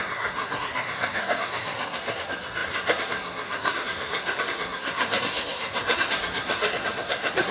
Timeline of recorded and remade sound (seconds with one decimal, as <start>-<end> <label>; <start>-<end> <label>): 0.0-7.5 remade